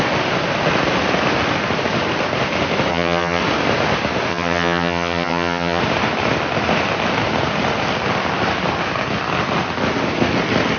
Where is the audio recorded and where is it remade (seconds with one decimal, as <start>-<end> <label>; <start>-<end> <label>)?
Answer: 0.0-2.9 recorded; 2.9-3.4 remade; 3.4-4.3 recorded; 4.3-5.8 remade; 5.8-10.8 recorded